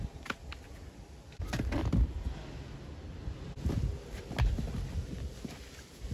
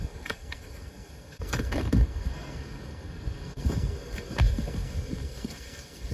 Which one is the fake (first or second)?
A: second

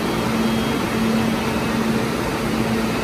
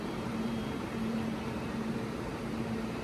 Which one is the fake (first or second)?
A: second